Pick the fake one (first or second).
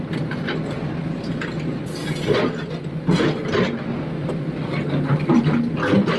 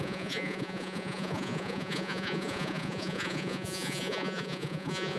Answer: second